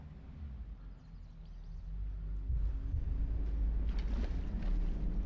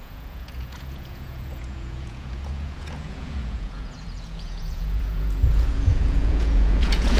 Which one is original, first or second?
first